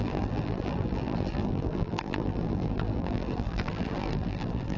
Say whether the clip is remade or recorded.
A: remade